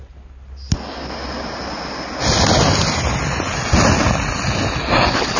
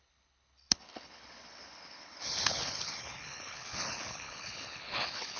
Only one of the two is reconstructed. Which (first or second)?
second